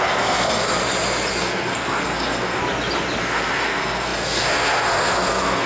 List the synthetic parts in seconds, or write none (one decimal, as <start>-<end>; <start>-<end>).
0.0-0.7; 1.4-2.6; 3.2-5.7